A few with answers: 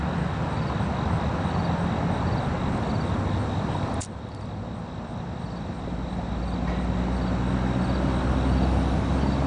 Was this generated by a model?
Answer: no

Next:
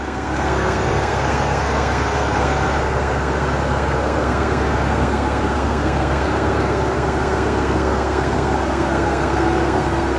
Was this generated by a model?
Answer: yes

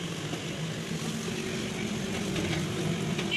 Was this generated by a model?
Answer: no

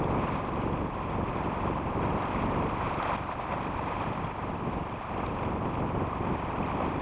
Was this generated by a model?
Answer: no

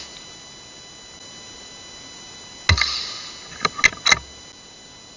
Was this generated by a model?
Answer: no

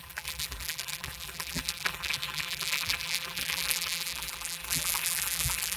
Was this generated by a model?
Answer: yes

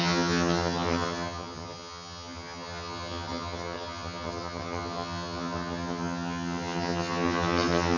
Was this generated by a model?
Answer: yes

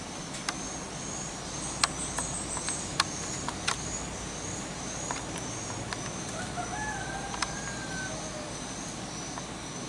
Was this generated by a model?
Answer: no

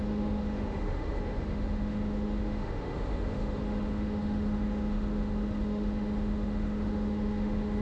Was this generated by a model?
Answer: yes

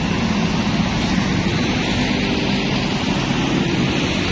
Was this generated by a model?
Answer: no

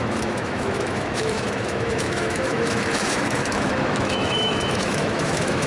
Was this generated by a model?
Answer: yes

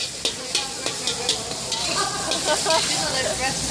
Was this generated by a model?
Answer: no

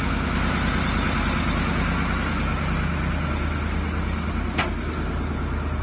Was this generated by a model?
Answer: no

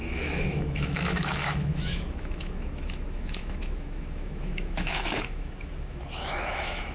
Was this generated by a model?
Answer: yes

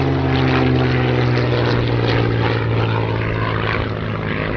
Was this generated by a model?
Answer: no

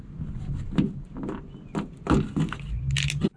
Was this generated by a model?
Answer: no